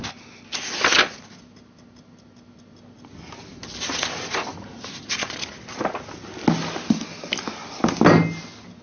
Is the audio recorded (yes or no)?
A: yes